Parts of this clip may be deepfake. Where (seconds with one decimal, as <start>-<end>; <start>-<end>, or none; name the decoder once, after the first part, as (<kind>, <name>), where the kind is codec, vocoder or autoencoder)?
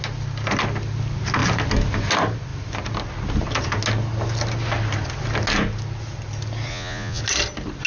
6.7-7.2 (vocoder, Vocos)